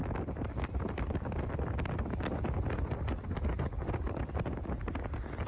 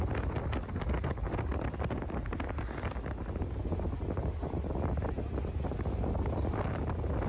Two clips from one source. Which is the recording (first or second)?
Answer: second